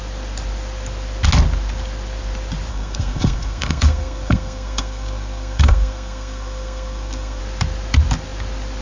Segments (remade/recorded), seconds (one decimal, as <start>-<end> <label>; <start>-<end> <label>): 0.0-2.7 recorded; 2.7-7.4 remade; 7.4-8.8 recorded